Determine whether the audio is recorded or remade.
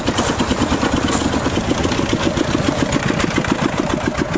recorded